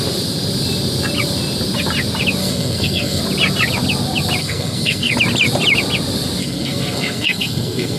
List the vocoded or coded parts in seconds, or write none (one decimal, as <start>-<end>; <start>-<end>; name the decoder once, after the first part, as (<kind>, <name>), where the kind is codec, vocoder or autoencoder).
2.4-3.2 (codec, SNAC); 4.4-5.1; 6.4-8.0